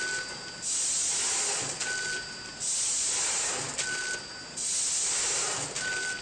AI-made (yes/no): no